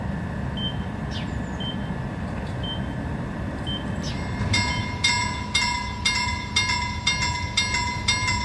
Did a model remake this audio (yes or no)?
no